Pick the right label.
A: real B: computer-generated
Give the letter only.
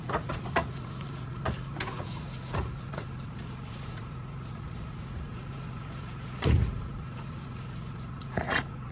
B